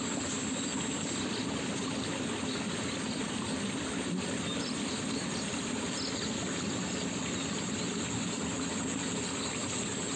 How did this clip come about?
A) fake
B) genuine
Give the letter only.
B